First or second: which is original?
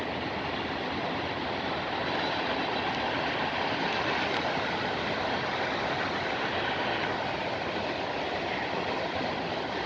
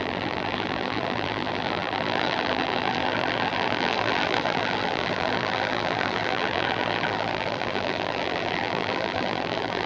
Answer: first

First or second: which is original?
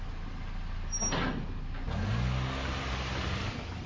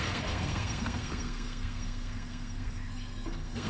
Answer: first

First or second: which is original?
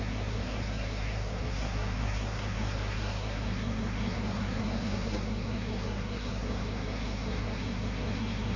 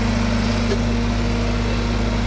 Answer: second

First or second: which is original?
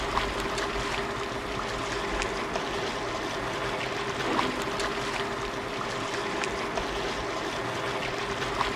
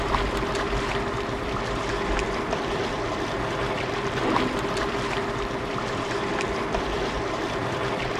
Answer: first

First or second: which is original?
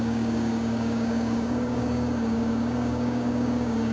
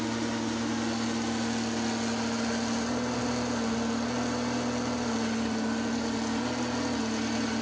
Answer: second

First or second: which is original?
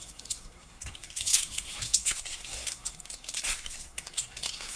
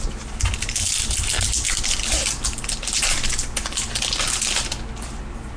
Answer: second